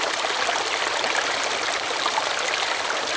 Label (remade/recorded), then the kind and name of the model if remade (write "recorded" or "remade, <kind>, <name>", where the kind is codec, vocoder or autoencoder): recorded